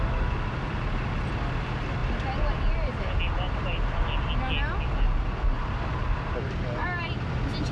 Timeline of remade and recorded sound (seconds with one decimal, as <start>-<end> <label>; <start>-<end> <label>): 0.0-7.7 recorded